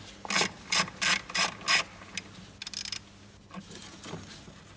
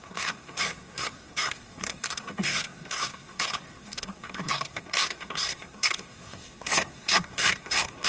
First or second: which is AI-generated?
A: second